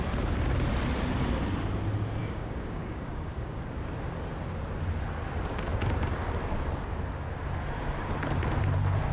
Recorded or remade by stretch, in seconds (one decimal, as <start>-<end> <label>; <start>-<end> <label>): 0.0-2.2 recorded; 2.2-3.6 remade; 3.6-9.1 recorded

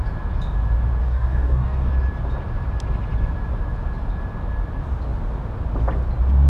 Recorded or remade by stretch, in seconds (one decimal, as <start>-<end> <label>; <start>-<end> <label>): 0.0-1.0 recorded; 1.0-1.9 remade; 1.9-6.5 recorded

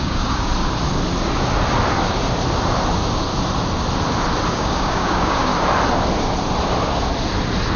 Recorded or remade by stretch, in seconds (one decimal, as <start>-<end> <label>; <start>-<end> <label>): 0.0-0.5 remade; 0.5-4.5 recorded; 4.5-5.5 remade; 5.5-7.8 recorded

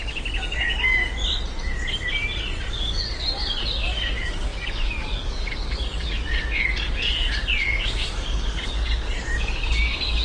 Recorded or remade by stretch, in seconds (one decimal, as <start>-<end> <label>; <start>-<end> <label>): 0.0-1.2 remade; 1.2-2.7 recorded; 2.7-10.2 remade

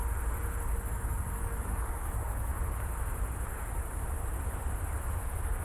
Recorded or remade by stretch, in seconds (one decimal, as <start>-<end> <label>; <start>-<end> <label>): 0.0-0.9 recorded; 0.9-2.5 remade; 2.5-5.6 recorded